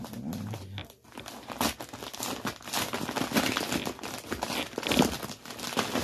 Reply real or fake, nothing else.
real